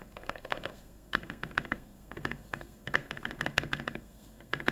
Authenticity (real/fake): fake